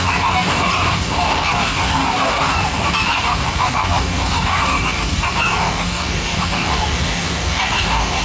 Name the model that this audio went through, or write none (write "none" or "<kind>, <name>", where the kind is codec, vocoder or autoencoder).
codec, DAC